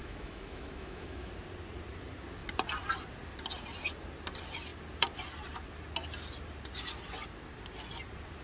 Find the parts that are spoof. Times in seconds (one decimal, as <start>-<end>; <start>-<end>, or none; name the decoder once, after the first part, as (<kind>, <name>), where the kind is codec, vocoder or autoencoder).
0.0-1.3 (autoencoder, DAC-VAE)